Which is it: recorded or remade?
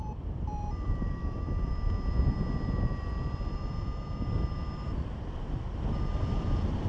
remade